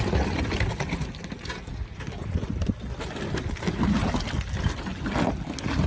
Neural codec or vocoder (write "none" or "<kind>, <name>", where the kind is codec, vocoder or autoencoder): none